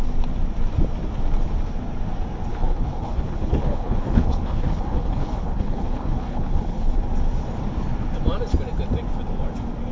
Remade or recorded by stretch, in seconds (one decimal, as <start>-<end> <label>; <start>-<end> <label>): 0.0-2.5 recorded; 2.5-7.0 remade; 7.0-9.9 recorded